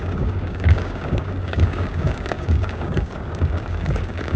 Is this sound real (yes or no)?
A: no